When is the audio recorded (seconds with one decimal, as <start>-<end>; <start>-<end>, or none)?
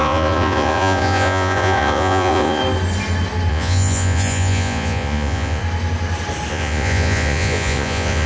2.6-3.5; 5.6-6.5